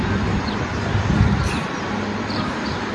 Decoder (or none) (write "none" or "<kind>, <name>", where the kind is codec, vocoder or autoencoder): none